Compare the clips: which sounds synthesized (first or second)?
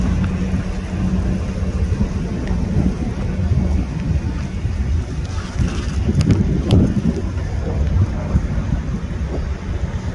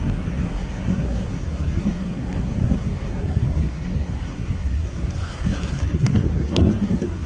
second